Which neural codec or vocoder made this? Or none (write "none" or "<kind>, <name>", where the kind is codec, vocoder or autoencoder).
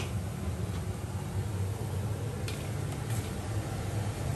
none